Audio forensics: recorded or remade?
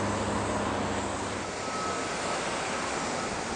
recorded